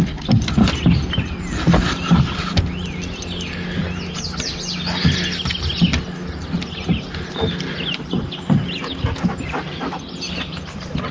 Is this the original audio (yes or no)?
yes